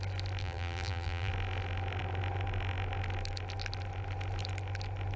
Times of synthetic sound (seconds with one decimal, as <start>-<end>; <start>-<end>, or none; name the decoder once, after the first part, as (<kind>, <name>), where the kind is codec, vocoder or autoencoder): 0.4-1.3 (vocoder, BigVGAN v2)